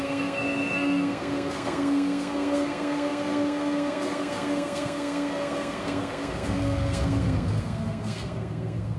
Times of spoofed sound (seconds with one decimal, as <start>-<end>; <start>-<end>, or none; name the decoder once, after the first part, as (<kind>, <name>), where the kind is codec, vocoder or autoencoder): 0.0-9.0 (codec, SNAC)